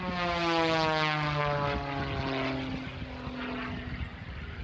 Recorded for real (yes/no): yes